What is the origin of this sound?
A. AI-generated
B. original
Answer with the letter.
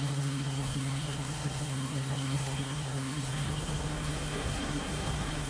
A